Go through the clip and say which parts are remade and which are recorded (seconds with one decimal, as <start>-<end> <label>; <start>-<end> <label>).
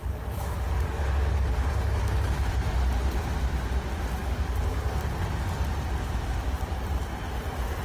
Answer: 0.0-2.5 remade; 2.5-4.2 recorded; 4.2-5.0 remade; 5.0-7.8 recorded